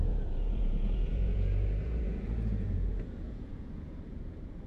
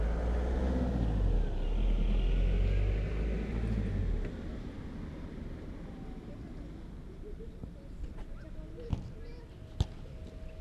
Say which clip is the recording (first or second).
second